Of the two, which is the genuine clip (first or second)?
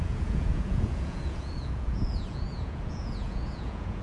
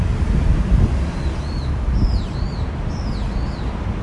second